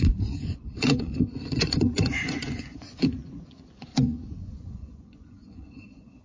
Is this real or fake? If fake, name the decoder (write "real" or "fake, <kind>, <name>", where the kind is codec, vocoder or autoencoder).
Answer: fake, vocoder, Vocos